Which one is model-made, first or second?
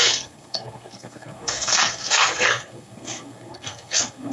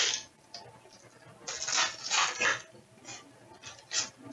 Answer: first